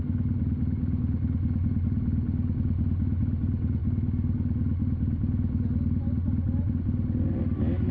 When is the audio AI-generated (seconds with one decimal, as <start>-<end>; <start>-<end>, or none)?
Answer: none